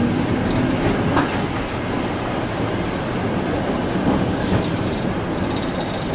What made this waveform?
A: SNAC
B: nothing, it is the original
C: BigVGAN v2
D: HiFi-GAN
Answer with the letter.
B